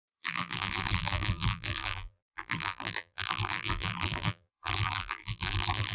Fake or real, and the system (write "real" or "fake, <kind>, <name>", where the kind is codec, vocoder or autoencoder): fake, vocoder, BigVGAN v2